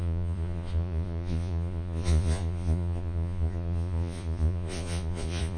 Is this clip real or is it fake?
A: fake